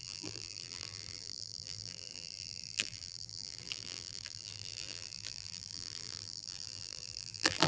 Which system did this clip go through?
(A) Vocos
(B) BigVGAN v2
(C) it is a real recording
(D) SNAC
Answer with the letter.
B